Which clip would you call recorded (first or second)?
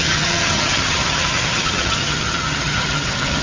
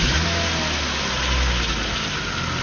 second